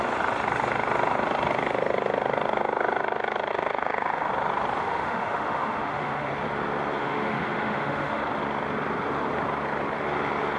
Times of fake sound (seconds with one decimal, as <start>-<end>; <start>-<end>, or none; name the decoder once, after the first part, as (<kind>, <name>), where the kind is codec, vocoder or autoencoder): 3.5-4.3 (autoencoder, DAC-VAE); 4.8-6.3; 7.0-8.2